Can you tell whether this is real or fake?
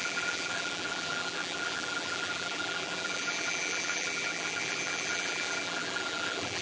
fake